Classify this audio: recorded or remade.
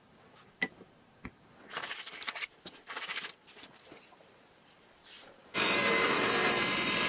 remade